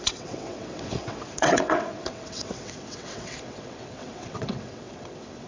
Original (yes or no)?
no